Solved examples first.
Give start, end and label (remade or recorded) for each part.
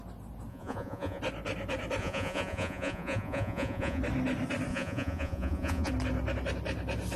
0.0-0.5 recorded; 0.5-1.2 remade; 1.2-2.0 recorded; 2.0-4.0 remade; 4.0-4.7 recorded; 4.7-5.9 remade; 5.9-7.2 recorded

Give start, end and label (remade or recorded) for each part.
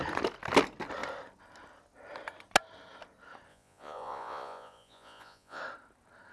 0.0-3.5 recorded; 3.5-5.6 remade; 5.6-6.3 recorded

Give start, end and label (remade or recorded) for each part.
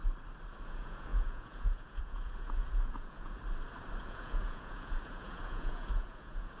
0.0-0.7 recorded; 0.7-3.4 remade; 3.4-4.0 recorded; 4.0-6.6 remade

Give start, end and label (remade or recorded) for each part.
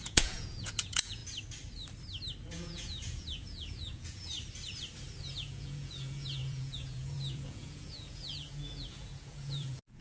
0.0-1.2 remade; 1.2-2.5 recorded; 2.5-4.3 remade; 4.3-5.3 recorded; 5.3-10.0 remade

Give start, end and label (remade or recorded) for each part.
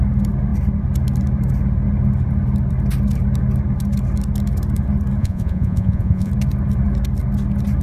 0.0-5.2 recorded; 5.2-6.3 remade; 6.3-7.8 recorded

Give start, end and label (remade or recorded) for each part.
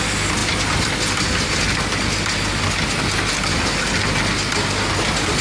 0.0-5.4 recorded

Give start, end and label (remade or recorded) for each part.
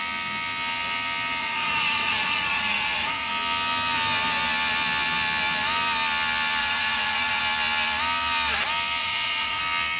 0.0-1.4 recorded; 1.4-3.3 remade; 3.3-6.6 recorded; 6.6-7.4 remade; 7.4-9.0 recorded; 9.0-9.6 remade; 9.6-10.0 recorded